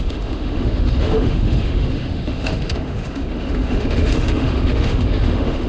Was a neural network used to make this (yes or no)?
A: yes